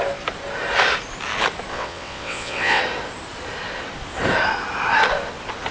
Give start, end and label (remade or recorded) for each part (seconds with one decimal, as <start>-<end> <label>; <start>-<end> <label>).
0.0-1.7 recorded; 1.7-2.8 remade; 2.8-5.7 recorded